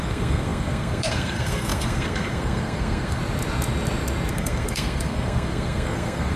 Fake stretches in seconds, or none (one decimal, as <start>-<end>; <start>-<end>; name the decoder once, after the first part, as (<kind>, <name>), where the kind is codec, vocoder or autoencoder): 0.0-3.2 (codec, SNAC); 4.3-6.4